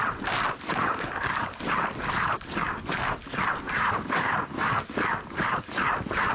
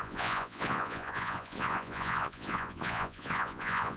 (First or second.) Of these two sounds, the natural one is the first